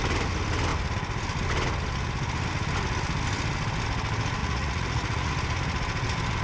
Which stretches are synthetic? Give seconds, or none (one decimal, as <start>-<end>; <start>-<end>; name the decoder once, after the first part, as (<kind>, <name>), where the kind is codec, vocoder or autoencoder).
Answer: 4.4-5.3 (vocoder, Vocos)